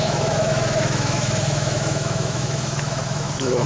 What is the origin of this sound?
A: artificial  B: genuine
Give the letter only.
A